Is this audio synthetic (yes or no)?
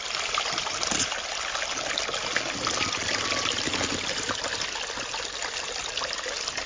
no